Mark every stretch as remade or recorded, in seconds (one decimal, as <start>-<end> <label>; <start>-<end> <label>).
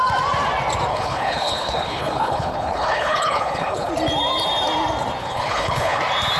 0.0-0.9 recorded; 0.9-3.9 remade; 3.9-5.2 recorded; 5.2-6.0 remade; 6.0-6.4 recorded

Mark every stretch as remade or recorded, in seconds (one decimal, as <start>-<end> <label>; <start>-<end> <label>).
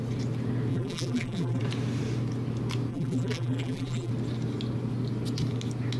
0.0-0.7 recorded; 0.7-1.6 remade; 1.6-2.9 recorded; 2.9-4.1 remade; 4.1-6.0 recorded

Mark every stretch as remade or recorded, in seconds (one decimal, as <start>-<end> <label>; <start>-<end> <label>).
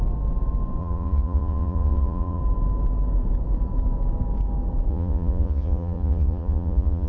0.0-0.8 recorded; 0.8-2.4 remade; 2.4-4.9 recorded; 4.9-7.1 remade